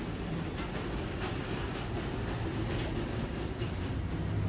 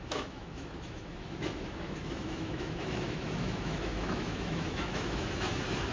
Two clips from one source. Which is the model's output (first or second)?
second